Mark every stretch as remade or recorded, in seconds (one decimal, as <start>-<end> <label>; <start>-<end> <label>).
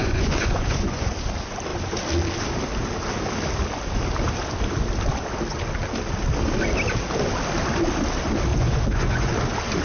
0.0-1.1 remade; 1.1-8.5 recorded; 8.5-9.3 remade; 9.3-9.8 recorded